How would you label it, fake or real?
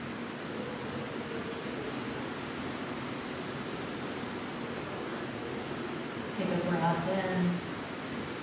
real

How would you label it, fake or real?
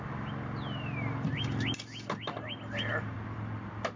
real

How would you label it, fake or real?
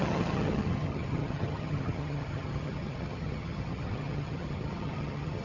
fake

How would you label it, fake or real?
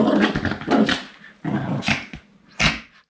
real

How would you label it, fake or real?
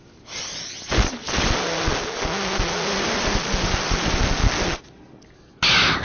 real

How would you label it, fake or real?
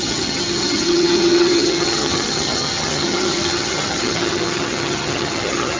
fake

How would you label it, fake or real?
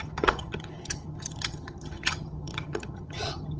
fake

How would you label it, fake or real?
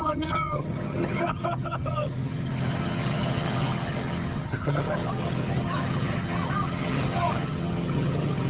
fake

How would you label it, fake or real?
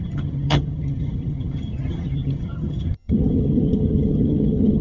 fake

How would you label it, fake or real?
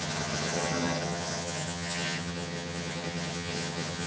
fake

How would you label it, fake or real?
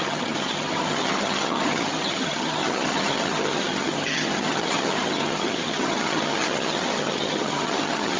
fake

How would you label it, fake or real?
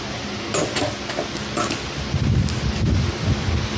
real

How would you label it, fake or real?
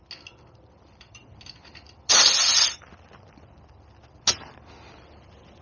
real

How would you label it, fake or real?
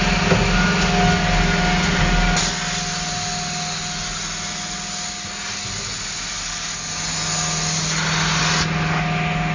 real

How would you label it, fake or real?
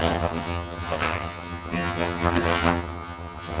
fake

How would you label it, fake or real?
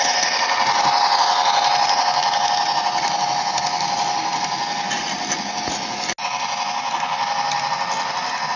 real